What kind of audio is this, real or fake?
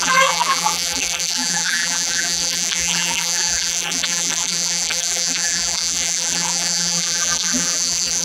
fake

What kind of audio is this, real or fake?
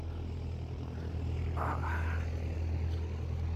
real